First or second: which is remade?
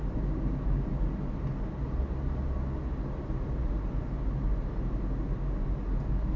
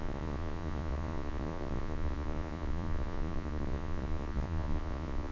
second